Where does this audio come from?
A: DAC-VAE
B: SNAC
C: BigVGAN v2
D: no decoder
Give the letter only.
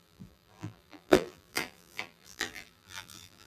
C